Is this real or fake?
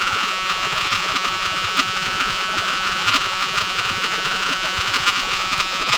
fake